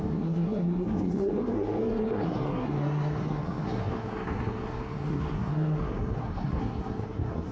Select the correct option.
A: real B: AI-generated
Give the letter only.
B